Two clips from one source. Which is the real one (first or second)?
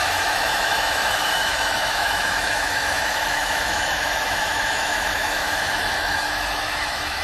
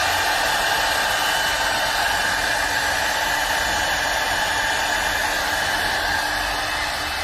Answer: second